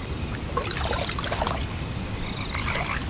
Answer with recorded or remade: recorded